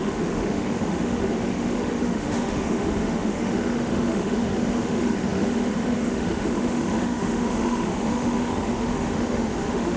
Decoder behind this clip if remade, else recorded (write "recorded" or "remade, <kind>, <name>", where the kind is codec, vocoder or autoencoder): remade, autoencoder, DAC-VAE